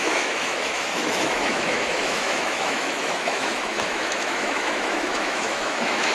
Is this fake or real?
fake